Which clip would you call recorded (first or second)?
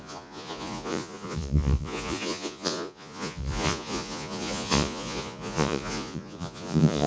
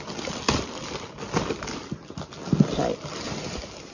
second